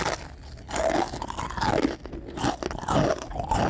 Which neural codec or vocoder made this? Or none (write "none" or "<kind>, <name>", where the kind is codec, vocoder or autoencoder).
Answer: none